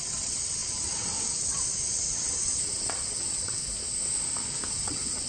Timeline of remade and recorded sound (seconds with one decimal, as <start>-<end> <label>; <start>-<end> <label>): 0.0-3.6 remade; 3.6-4.7 recorded; 4.7-5.3 remade